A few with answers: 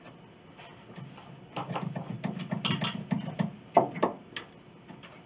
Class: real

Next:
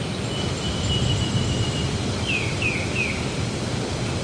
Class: real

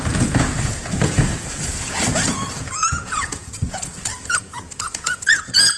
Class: fake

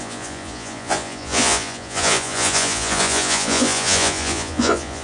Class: fake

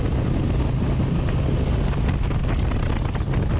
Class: real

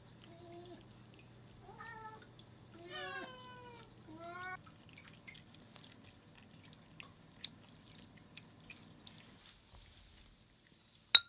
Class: real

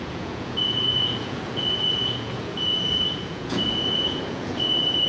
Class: fake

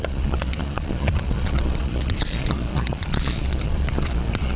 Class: fake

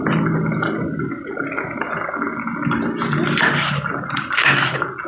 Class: real